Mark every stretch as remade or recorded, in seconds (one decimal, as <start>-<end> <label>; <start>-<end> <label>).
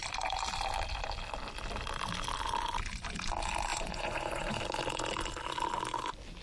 0.0-3.7 recorded; 3.7-4.6 remade; 4.6-6.4 recorded